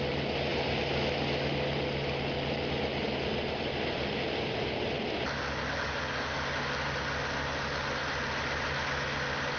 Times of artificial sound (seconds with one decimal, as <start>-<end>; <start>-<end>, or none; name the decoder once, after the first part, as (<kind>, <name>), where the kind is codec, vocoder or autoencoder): none